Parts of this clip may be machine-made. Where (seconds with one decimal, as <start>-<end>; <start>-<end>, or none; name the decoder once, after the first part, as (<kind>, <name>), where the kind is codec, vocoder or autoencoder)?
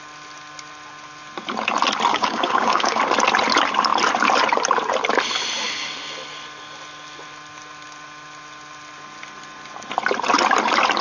2.1-3.0 (codec, DAC)